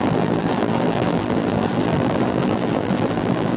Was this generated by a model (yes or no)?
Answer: yes